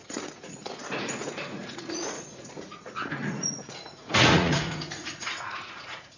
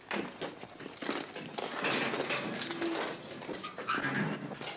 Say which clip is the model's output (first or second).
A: first